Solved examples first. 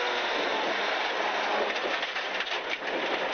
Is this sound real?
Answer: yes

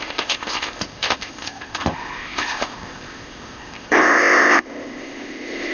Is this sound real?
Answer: no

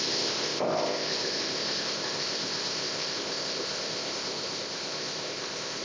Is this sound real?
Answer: no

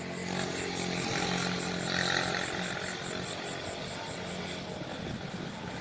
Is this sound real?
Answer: yes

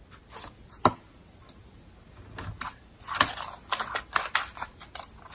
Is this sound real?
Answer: yes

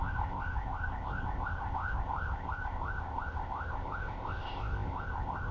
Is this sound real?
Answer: no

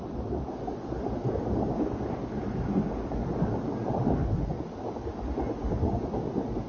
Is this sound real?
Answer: yes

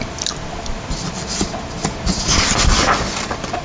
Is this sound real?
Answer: yes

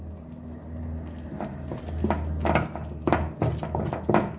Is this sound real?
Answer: yes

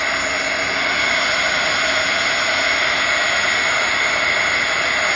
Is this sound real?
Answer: yes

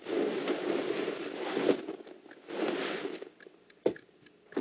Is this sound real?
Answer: yes